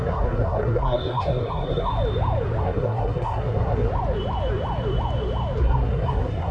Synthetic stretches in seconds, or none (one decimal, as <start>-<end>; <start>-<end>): 0.0-1.9; 2.6-3.9; 5.6-6.5